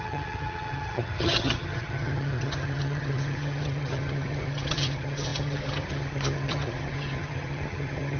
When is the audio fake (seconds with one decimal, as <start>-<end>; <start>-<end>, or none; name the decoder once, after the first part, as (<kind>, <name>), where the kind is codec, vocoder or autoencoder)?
0.0-8.2 (vocoder, HiFi-GAN)